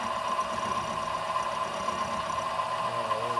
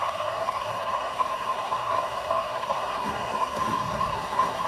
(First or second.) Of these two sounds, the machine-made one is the second